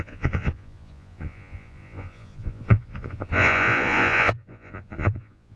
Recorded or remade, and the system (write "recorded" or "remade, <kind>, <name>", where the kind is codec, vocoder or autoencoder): remade, vocoder, Vocos